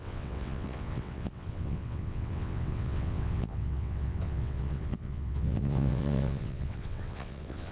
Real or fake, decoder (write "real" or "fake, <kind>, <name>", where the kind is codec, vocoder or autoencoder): fake, vocoder, WaveNeXt